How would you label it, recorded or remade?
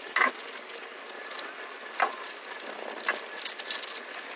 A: recorded